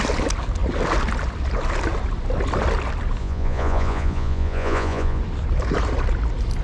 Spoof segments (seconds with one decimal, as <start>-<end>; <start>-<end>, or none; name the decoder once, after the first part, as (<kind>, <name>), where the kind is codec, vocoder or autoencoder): 3.2-5.2 (vocoder, Vocos)